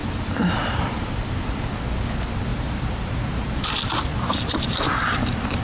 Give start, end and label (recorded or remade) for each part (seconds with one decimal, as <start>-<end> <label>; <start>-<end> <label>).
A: 0.0-1.7 remade; 1.7-2.5 recorded; 2.5-3.1 remade; 3.1-4.1 recorded; 4.1-4.6 remade; 4.6-5.6 recorded